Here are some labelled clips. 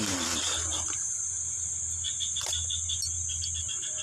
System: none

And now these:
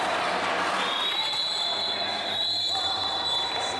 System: none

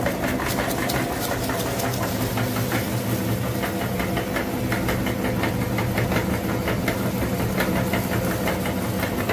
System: none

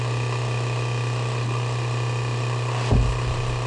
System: none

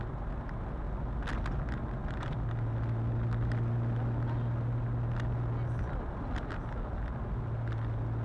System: none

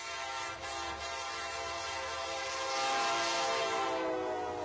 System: none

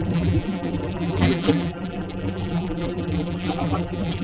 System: vocoder, BigVGAN v2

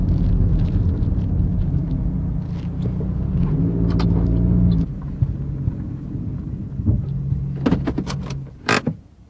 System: none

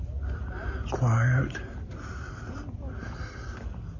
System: none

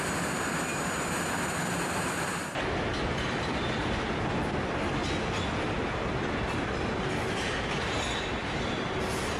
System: none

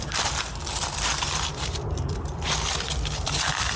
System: vocoder, BigVGAN v2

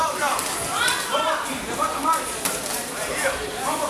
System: vocoder, BigVGAN v2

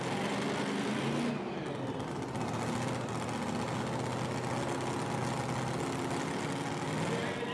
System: none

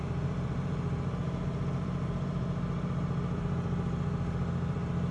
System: vocoder, BigVGAN v2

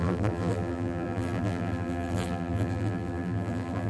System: vocoder, BigVGAN v2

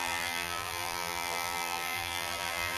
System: vocoder, BigVGAN v2